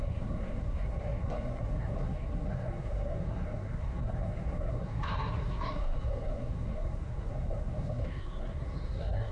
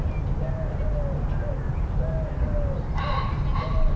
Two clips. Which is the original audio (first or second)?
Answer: second